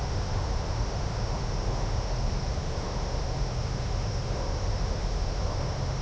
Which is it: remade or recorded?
remade